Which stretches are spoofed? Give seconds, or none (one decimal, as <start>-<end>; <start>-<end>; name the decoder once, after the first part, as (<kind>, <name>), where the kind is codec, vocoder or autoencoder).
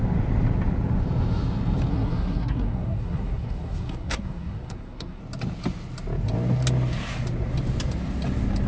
1.9-5.2 (codec, SNAC)